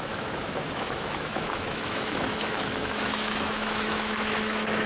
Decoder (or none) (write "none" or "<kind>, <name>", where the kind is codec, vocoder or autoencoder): autoencoder, DAC-VAE